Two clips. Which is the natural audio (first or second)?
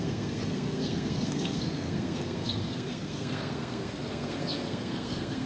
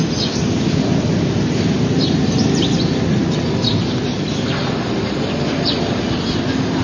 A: second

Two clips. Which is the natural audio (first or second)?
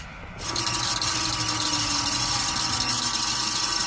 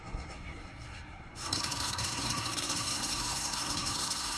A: first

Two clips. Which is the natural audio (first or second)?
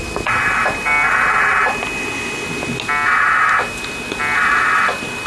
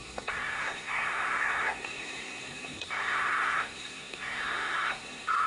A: first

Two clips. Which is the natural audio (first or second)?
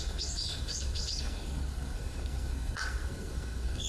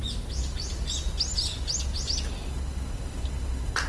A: second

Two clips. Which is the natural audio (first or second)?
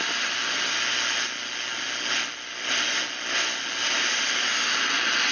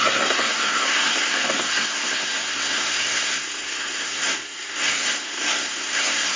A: first